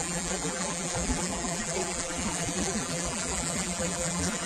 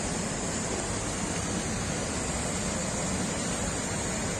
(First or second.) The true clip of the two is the second